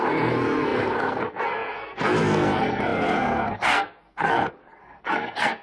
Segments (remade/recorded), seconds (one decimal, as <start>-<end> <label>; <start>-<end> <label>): 0.0-5.6 remade

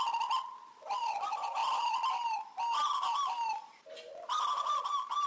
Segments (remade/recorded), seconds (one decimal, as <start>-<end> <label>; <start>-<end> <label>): 0.0-5.3 recorded

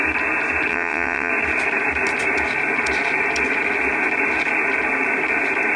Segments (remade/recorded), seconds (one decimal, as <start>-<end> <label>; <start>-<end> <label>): 0.0-0.7 recorded; 0.7-1.3 remade; 1.3-5.8 recorded

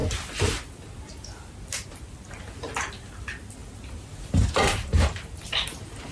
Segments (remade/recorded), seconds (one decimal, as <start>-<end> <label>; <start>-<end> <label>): 0.0-6.1 recorded